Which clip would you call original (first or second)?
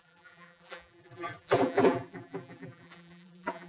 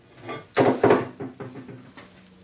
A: second